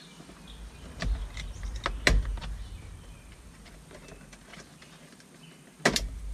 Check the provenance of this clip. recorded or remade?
recorded